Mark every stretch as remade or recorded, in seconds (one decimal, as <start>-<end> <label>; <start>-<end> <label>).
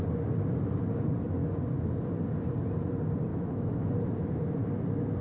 0.0-3.3 recorded; 3.3-3.8 remade; 3.8-5.2 recorded